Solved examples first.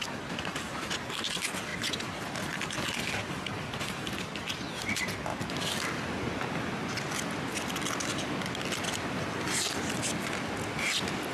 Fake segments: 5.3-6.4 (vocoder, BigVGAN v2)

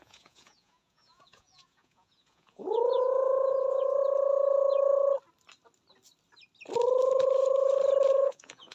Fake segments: 0.0-4.0 (vocoder, Vocos); 8.1-8.7